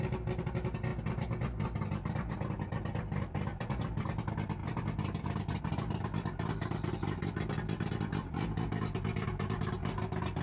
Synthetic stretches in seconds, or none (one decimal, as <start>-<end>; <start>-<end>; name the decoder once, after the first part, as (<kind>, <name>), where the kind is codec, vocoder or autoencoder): 3.5-4.0 (vocoder, BigVGAN v2); 4.6-5.6